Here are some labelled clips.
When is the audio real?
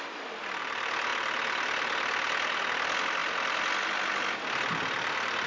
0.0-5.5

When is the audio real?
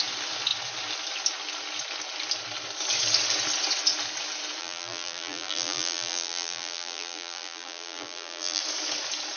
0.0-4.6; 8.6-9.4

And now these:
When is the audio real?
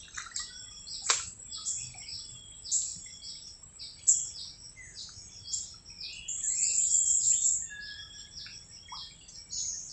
0.0-2.9; 3.8-9.9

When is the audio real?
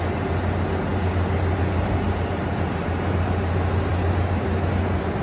0.0-5.2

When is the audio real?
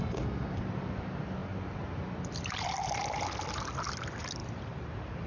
0.0-4.4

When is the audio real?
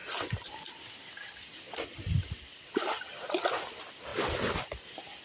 0.0-5.2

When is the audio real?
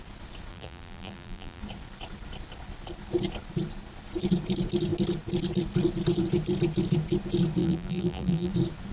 0.0-0.5; 1.6-7.6; 8.5-8.9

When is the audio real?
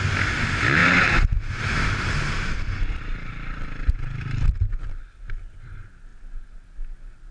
0.0-0.8; 5.2-7.3